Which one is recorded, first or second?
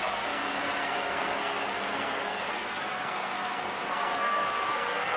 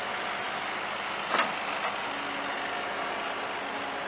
second